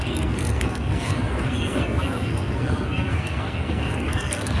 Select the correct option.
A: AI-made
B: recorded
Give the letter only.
A